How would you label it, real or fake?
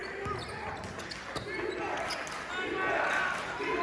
real